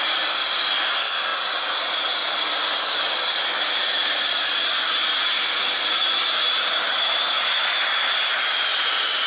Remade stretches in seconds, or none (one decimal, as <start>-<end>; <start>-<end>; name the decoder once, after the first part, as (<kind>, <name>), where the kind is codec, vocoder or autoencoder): none